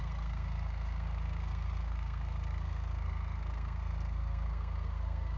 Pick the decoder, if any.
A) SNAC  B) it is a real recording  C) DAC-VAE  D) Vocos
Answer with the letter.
A